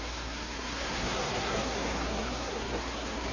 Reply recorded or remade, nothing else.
remade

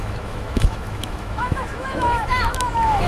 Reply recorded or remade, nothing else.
remade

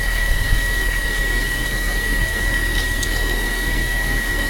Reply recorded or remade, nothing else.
remade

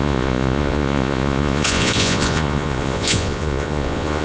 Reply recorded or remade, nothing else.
remade